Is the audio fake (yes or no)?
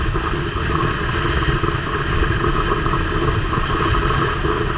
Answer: no